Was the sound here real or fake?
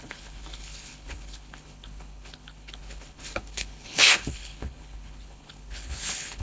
fake